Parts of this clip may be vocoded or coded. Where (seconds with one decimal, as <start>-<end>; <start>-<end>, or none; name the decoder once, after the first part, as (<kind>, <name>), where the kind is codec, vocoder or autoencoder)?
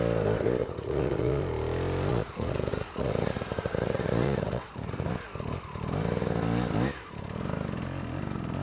0.6-1.4 (vocoder, Vocos); 2.1-5.1